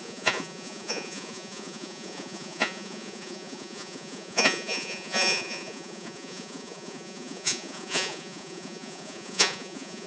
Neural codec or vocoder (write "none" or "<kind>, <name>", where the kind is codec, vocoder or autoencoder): vocoder, Vocos